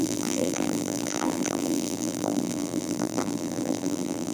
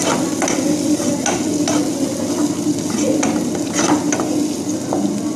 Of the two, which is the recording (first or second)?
second